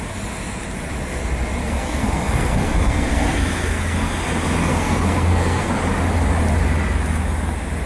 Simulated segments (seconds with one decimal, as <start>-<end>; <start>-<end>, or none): 1.6-4.1; 4.7-5.7